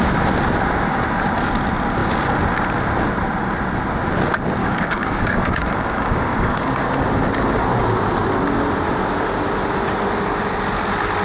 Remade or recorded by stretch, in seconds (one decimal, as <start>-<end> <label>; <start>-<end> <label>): 0.0-4.6 recorded; 4.6-6.8 remade; 6.8-11.2 recorded